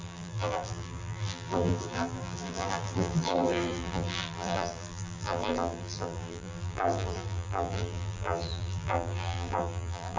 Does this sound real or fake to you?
fake